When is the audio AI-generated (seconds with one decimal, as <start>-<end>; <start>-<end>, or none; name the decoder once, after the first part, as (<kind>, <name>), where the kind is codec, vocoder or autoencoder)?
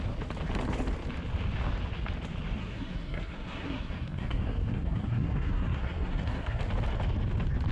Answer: 2.6-6.6 (codec, SNAC)